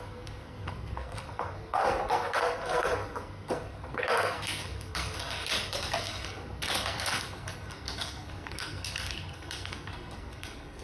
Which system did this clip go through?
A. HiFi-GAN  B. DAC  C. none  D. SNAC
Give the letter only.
D